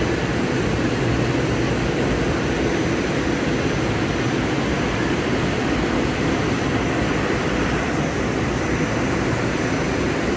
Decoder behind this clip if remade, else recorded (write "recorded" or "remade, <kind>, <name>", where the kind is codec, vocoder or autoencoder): recorded